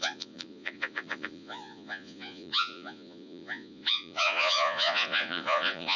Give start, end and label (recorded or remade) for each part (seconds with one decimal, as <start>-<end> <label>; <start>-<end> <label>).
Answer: 0.0-6.0 remade